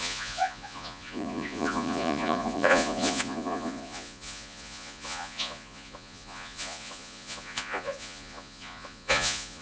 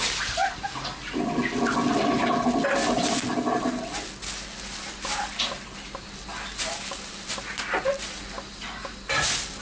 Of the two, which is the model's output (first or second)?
first